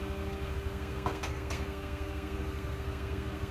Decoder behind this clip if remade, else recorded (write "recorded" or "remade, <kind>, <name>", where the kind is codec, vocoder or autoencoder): remade, codec, SNAC